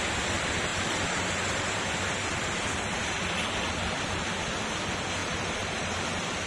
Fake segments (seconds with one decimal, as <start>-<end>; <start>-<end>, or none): 0.7-1.8; 5.2-5.9